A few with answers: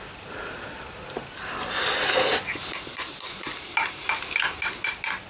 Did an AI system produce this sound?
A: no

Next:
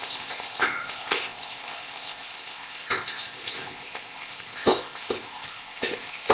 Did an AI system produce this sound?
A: yes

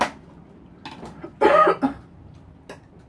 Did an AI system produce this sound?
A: no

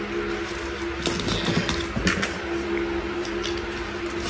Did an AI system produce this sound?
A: no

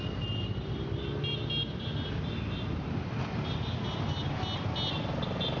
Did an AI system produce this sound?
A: no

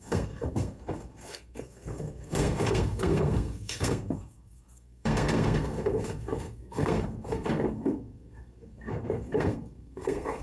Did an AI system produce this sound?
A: yes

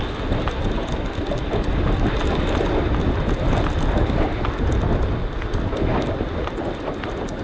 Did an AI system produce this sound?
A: no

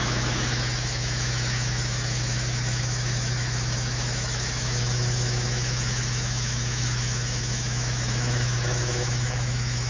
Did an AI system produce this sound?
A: yes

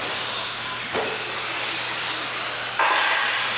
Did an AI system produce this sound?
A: no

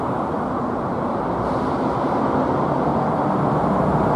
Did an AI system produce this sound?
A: no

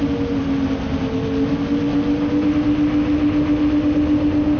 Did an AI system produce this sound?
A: no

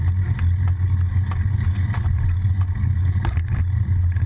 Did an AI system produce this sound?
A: no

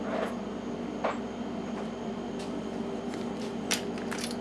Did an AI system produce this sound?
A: yes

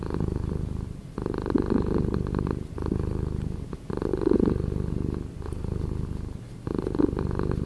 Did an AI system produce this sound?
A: no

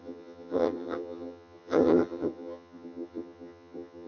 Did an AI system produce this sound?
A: yes